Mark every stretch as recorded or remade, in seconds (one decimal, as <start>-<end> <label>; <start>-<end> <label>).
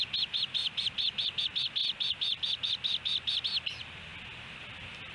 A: 0.0-5.1 recorded